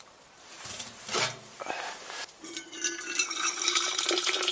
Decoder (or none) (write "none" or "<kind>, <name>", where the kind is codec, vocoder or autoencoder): vocoder, BigVGAN v2